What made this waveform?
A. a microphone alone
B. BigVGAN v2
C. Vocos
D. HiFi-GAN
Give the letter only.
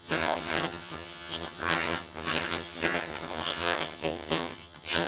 D